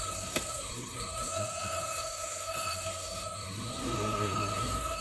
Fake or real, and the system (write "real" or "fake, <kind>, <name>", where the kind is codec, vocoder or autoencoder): fake, codec, SNAC